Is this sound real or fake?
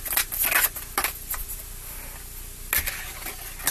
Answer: real